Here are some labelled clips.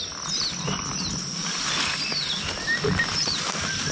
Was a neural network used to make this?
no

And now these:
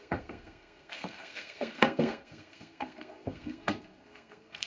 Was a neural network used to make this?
yes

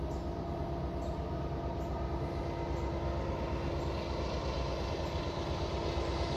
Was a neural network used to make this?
no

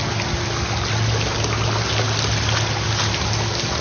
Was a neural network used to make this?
no